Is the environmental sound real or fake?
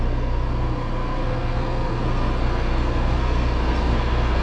fake